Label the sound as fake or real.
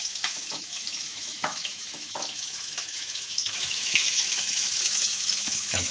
fake